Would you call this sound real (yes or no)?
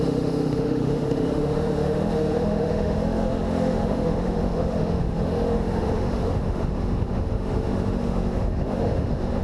no